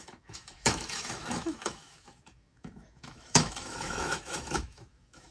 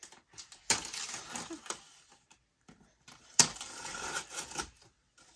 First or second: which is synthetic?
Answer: first